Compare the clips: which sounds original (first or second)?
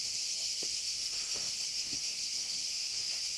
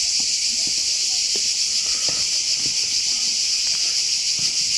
second